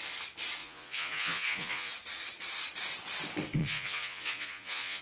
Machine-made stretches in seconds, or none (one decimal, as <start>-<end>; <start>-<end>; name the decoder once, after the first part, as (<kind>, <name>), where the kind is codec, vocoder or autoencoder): 0.6-1.9 (vocoder, Vocos); 3.6-5.0